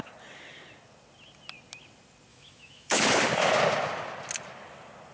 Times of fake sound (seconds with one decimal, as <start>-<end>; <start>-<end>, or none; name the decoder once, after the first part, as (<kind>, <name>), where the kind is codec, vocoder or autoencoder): 2.3-3.0 (autoencoder, DAC-VAE)